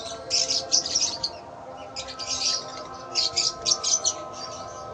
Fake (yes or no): no